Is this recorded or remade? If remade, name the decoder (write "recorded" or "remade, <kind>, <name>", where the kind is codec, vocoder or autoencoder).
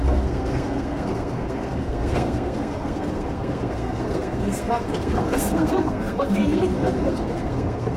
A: remade, codec, SNAC